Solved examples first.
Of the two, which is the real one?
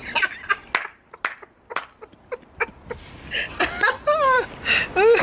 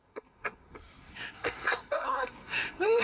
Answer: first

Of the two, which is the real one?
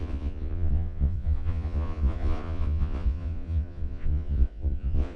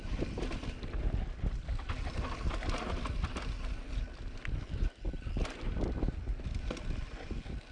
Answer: second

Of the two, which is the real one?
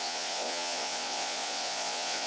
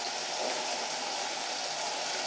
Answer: second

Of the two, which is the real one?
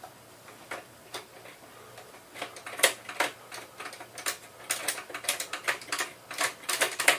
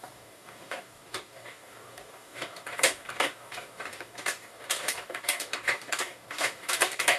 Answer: first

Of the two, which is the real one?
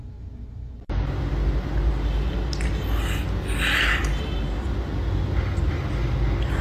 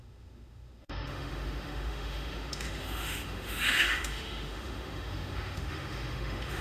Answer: first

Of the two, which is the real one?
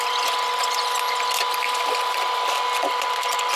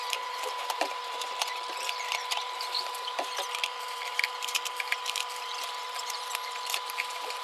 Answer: first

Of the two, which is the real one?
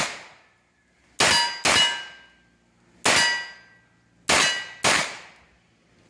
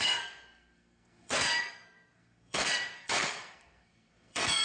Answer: first